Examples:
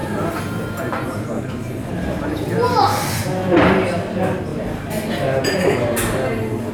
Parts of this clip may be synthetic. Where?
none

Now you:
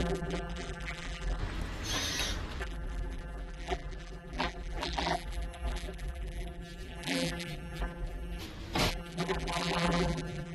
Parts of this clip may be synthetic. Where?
0.0-1.4 (vocoder, BigVGAN v2); 2.6-8.4; 8.9-10.5

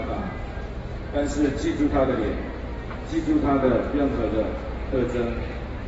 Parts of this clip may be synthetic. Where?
0.0-0.9 (vocoder, BigVGAN v2); 2.1-2.7; 5.4-5.9

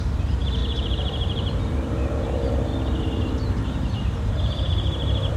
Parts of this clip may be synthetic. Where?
0.0-2.7 (vocoder, BigVGAN v2); 3.6-5.4

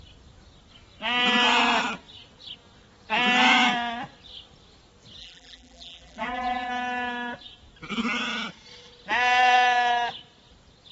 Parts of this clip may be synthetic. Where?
5.2-6.7 (vocoder, BigVGAN v2)

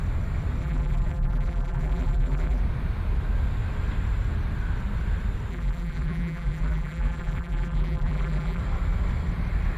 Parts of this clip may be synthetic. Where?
0.6-2.6 (vocoder, BigVGAN v2); 5.5-8.6

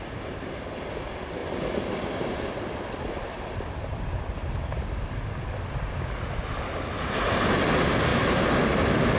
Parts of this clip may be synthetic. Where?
8.1-8.6 (vocoder, BigVGAN v2)